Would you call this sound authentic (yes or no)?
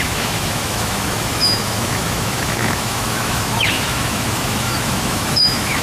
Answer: no